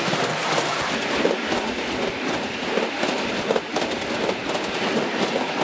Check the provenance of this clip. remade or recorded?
recorded